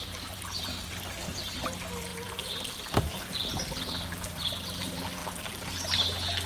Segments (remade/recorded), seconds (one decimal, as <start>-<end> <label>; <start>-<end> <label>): 0.0-5.2 remade; 5.2-6.5 recorded